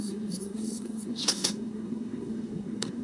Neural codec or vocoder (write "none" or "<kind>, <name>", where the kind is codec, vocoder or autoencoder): codec, SNAC